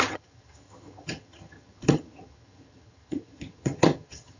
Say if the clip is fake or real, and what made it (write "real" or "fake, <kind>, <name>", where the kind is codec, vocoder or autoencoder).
fake, vocoder, HiFi-GAN